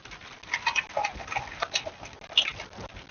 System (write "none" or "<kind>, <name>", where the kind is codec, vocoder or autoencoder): none